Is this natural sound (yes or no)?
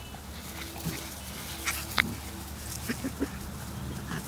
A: yes